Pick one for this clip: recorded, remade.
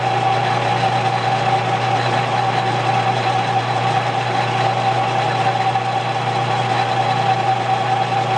recorded